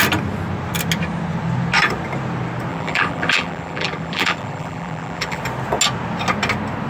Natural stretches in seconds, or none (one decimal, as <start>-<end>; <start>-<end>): 0.0-2.7; 5.4-6.9